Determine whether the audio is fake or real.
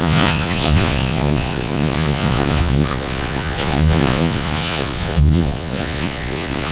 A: fake